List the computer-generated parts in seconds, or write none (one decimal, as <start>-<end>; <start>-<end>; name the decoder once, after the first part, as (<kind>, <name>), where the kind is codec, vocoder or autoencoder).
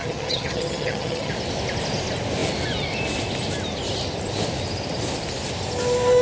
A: 0.0-1.3 (vocoder, HiFi-GAN)